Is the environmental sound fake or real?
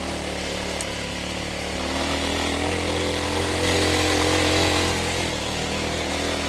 real